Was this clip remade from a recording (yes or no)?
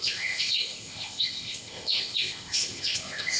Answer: yes